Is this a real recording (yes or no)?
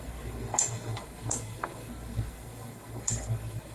no